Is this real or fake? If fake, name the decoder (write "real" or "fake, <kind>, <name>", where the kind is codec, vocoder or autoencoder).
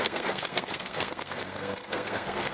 fake, codec, SNAC